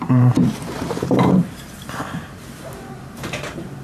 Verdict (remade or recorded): remade